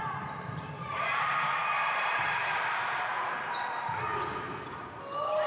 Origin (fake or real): real